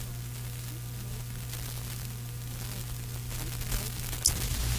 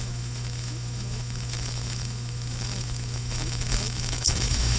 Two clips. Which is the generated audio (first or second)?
second